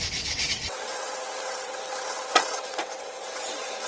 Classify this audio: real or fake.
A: fake